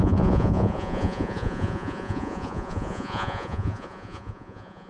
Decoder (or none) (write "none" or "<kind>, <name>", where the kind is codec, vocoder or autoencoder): vocoder, Vocos